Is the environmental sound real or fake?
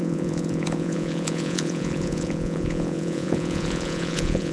fake